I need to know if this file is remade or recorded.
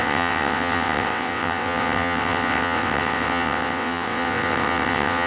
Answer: remade